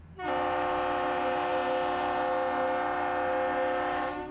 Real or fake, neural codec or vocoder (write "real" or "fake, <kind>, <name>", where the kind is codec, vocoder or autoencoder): real